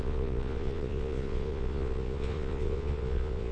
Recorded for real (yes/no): no